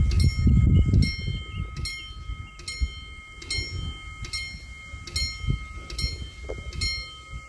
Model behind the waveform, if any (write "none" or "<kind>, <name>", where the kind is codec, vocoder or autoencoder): none